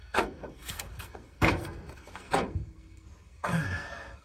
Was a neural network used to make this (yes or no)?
yes